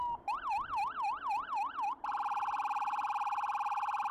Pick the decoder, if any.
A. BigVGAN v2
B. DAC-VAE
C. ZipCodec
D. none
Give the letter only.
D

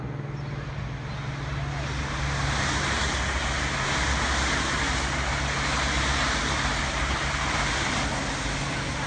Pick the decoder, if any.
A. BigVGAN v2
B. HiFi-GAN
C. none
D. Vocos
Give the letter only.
C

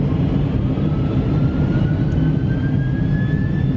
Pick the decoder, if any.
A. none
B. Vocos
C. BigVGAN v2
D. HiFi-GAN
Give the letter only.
A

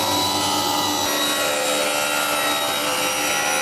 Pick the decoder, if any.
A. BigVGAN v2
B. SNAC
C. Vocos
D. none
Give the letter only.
D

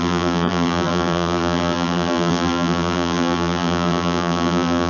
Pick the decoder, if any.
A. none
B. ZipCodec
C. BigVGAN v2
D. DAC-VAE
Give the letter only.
C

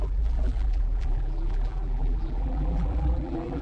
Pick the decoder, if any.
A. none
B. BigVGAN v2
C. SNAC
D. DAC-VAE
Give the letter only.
B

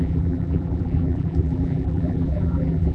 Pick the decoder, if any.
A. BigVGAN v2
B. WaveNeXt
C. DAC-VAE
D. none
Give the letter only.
A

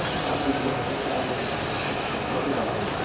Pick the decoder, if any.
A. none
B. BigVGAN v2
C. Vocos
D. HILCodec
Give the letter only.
A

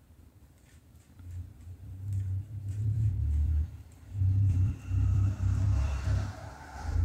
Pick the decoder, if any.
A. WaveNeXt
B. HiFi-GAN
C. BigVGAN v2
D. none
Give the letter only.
C